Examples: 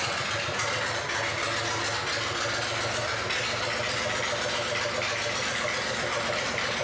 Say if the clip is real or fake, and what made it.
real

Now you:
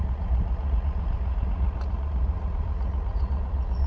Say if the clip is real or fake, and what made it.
fake, vocoder, Vocos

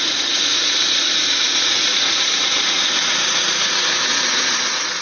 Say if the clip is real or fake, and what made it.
fake, vocoder, Vocos